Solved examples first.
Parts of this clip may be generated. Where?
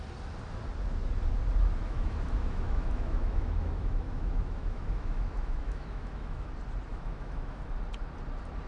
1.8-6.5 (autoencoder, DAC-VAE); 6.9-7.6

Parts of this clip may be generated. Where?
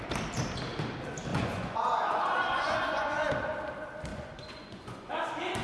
1.3-3.3 (vocoder, Vocos); 4.1-5.1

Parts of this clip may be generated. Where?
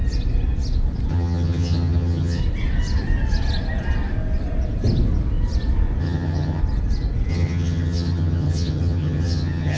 1.1-2.4 (vocoder, HiFi-GAN); 6.0-6.6; 7.3-9.8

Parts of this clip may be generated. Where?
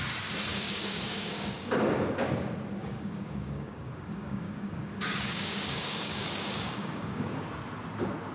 0.5-2.1 (codec, DAC); 2.8-7.5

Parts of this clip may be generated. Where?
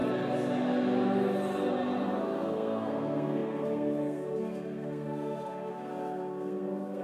2.2-7.0 (codec, SNAC)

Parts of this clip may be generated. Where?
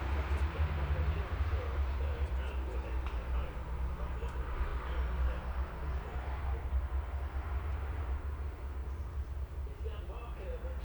8.8-10.0 (vocoder, BigVGAN v2)